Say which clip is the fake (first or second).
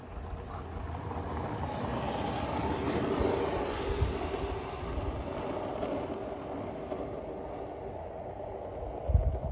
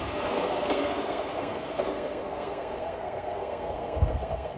second